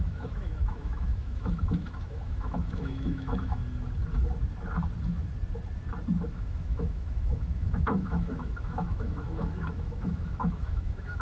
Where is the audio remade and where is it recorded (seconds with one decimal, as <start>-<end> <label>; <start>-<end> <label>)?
0.0-3.6 remade; 3.6-6.3 recorded; 6.3-11.2 remade